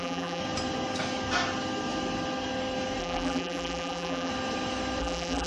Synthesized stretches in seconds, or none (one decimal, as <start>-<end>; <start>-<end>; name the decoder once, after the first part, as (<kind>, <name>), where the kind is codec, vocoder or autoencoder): 0.0-0.4 (vocoder, BigVGAN v2); 3.0-4.3; 5.0-5.5